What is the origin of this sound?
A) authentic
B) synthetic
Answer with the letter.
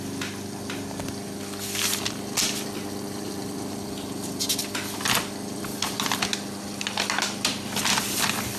A